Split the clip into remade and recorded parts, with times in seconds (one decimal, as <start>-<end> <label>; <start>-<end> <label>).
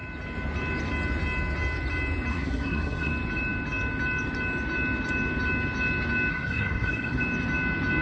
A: 0.0-2.3 recorded; 2.3-3.1 remade; 3.1-6.3 recorded; 6.3-7.2 remade; 7.2-8.0 recorded